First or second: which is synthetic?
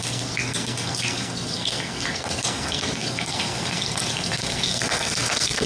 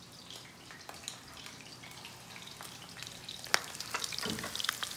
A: first